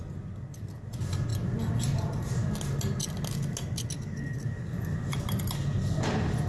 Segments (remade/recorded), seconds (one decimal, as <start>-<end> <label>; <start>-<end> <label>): 0.0-6.5 recorded